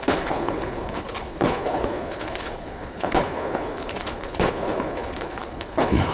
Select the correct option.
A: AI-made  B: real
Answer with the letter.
A